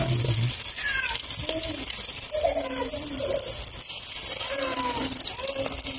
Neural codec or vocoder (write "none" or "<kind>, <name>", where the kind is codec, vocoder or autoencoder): none